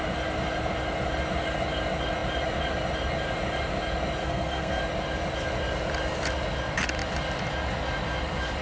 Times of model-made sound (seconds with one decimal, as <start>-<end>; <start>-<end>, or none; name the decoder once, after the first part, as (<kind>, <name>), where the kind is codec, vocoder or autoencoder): 4.2-4.8 (codec, SNAC)